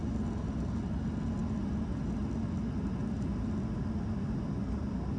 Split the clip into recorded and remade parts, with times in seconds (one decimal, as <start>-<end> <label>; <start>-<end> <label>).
0.0-5.2 recorded